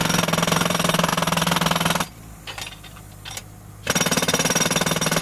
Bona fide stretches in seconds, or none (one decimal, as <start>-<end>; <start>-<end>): 0.0-5.2